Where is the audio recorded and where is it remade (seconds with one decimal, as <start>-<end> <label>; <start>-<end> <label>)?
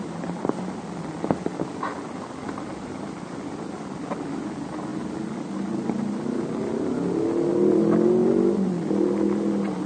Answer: 0.0-2.4 recorded; 2.4-4.0 remade; 4.0-8.2 recorded; 8.2-8.9 remade; 8.9-9.9 recorded